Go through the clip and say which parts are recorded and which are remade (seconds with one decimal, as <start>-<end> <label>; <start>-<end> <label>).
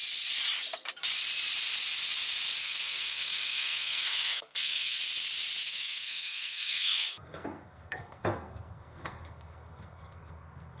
0.0-2.6 recorded; 2.6-5.0 remade; 5.0-5.6 recorded; 5.6-10.8 remade